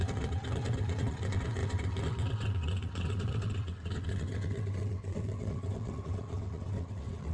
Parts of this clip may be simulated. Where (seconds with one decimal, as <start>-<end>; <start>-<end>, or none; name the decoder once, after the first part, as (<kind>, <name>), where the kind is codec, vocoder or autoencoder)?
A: 0.0-7.3 (vocoder, WaveNeXt)